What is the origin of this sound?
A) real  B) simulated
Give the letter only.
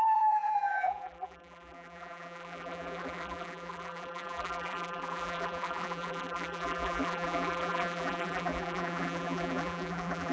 B